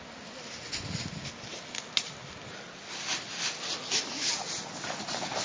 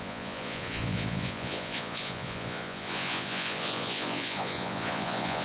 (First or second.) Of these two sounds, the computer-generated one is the second